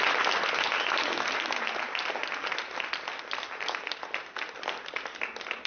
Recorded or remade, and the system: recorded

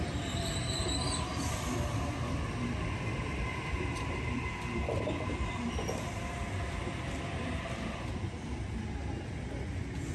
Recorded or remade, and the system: recorded